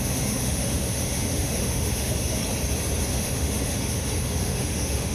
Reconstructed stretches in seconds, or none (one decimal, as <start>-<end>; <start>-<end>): 0.0-2.4; 3.1-5.1

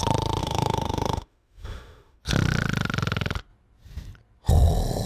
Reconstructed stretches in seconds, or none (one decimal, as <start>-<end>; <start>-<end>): 0.4-2.2

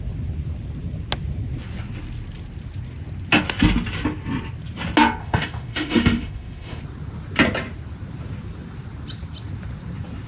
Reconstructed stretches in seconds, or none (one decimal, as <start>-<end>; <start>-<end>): 5.2-6.8

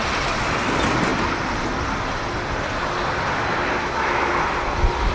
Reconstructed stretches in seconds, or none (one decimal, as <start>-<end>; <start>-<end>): 3.8-4.4

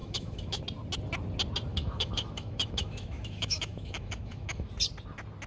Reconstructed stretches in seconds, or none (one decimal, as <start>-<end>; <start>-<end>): 0.0-0.6; 1.7-4.7